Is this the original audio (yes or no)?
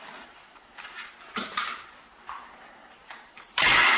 no